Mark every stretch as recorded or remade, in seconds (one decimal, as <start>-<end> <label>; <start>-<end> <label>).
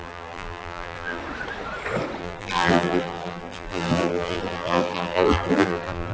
0.0-1.2 remade; 1.2-2.2 recorded; 2.2-6.1 remade